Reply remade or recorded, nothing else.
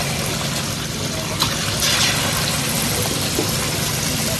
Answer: recorded